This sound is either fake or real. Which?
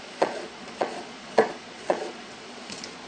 fake